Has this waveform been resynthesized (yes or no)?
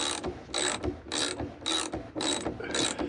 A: no